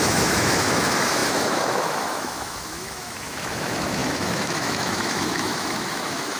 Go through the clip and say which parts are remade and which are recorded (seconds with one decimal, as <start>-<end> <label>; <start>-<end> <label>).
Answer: 0.0-6.4 remade